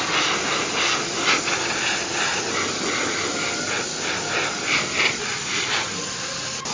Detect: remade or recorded recorded